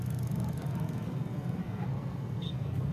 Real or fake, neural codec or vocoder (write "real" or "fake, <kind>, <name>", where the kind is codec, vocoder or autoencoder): fake, codec, SNAC